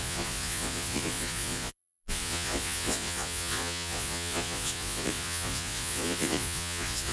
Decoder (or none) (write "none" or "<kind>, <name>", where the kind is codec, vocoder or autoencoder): vocoder, Vocos